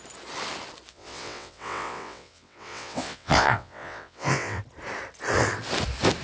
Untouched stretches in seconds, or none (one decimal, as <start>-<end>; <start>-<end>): 0.0-0.9; 4.6-6.2